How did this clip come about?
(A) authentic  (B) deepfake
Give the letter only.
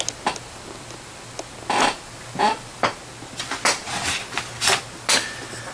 A